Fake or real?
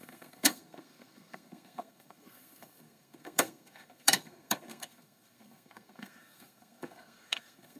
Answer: fake